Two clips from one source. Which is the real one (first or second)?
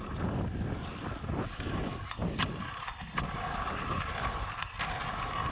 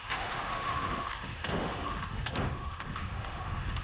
first